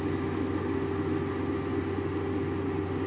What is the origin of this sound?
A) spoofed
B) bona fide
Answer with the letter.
B